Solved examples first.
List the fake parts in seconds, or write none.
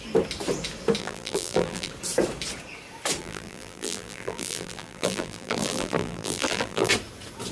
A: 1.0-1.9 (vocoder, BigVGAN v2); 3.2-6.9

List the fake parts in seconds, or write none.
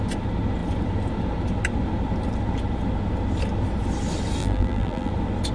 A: 4.4-5.1 (vocoder, BigVGAN v2)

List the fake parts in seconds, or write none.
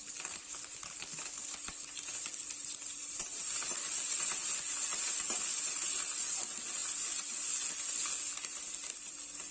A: none